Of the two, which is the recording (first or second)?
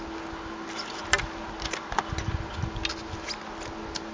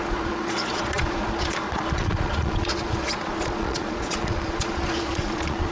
first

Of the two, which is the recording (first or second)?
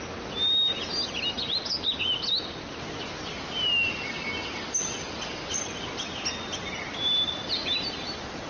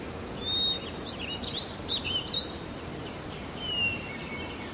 first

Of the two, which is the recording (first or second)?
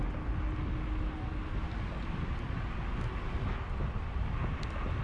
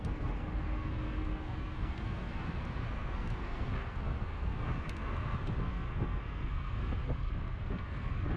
first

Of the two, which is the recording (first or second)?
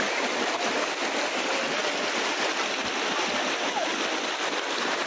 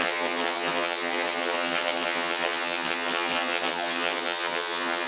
first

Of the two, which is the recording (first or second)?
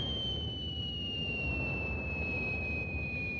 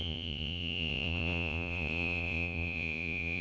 first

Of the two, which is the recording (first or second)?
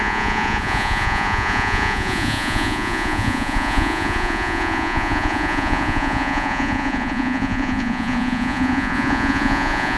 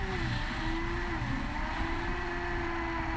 second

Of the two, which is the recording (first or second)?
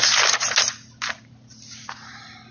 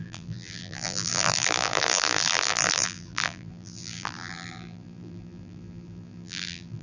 first